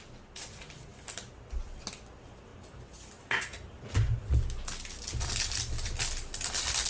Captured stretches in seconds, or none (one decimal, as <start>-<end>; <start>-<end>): 0.0-6.9